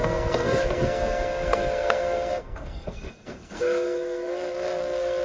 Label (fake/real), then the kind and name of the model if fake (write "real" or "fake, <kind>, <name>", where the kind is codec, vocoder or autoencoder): fake, codec, SNAC